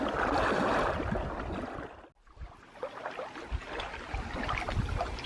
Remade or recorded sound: recorded